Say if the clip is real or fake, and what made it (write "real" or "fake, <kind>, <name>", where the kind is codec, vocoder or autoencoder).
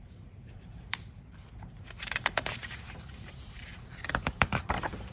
fake, vocoder, BigVGAN v2